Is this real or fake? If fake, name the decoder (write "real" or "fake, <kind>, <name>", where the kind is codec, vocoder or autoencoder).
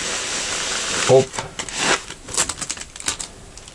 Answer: real